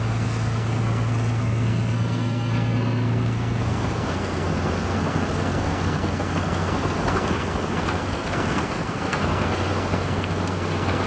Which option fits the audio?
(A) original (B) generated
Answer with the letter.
B